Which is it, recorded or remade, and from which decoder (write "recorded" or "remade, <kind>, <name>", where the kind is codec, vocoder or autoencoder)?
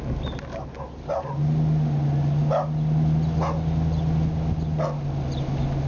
recorded